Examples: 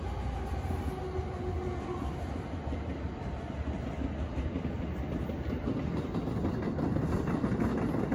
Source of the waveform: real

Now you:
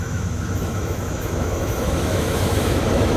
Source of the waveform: fake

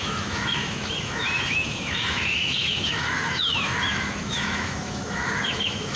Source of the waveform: fake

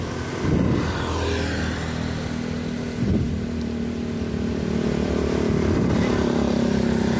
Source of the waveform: real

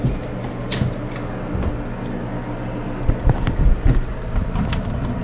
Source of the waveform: real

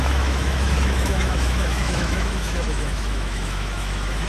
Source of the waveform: fake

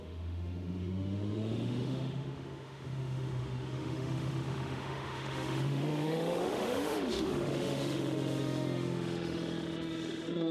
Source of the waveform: fake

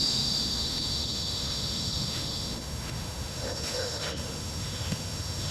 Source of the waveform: fake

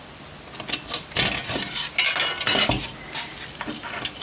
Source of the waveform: real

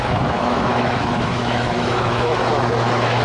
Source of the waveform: fake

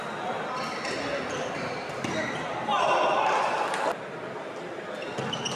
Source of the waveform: real